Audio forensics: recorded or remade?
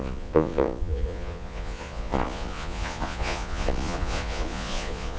remade